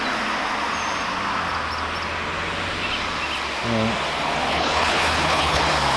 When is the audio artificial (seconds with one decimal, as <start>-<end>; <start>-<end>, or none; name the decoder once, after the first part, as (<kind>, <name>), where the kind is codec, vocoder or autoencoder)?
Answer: 4.5-5.6 (codec, HILCodec)